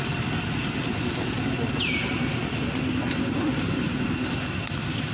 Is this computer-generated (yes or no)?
no